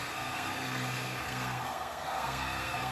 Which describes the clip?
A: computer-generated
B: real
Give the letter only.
A